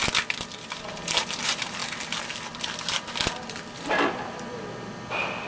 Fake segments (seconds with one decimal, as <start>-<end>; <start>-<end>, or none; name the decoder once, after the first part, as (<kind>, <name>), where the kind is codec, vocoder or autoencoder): none

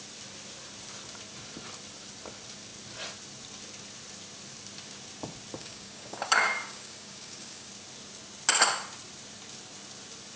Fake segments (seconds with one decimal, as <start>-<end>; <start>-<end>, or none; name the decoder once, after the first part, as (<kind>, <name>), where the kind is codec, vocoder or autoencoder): 5.6-7.7 (codec, DAC)

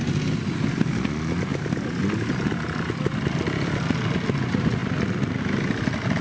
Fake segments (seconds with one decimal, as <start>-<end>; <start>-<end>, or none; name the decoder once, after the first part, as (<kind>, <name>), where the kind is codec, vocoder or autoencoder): none

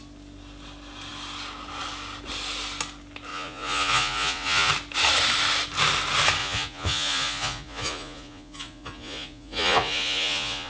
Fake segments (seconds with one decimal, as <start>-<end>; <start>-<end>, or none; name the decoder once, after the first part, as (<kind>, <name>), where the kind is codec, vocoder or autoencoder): 3.3-4.7 (vocoder, Vocos); 6.4-10.7